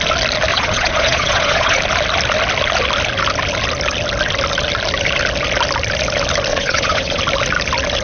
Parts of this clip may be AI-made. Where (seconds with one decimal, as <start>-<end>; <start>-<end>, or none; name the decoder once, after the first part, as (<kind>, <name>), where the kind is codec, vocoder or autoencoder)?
0.5-1.8 (vocoder, Vocos); 6.5-7.2